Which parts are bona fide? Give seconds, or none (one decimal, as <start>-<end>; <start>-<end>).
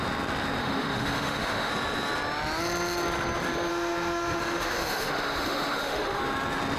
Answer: 0.0-0.6; 1.7-3.7; 6.2-6.8